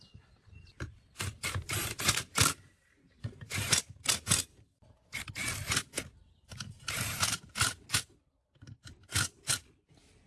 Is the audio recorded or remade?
recorded